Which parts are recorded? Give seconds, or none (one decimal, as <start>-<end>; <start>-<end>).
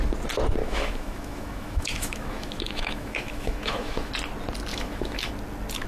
0.0-0.6; 4.1-4.7; 5.3-5.9